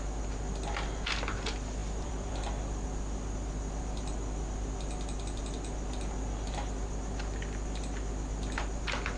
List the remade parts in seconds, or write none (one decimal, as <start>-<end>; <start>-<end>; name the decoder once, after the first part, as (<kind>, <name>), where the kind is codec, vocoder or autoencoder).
1.8-2.5 (vocoder, BigVGAN v2)